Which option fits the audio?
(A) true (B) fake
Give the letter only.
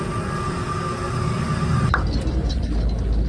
A